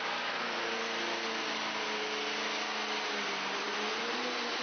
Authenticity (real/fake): real